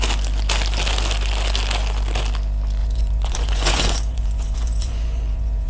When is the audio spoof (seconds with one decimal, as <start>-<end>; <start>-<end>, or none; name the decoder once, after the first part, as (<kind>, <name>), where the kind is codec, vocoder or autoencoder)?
2.8-5.7 (vocoder, Vocos)